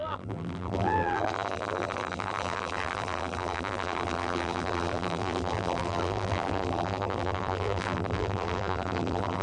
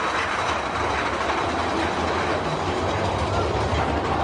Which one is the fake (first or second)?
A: first